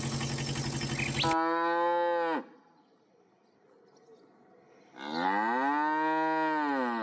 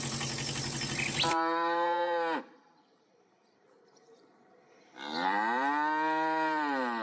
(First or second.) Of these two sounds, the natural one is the first